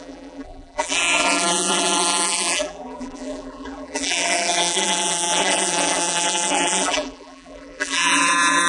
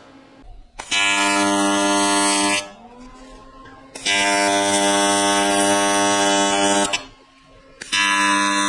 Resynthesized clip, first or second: first